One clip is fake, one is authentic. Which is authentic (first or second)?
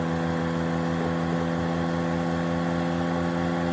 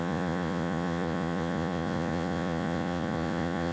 first